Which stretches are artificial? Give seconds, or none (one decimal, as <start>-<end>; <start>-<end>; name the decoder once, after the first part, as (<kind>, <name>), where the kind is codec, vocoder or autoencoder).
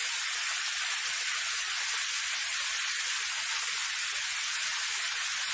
none